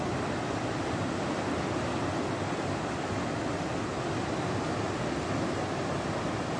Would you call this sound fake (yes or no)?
no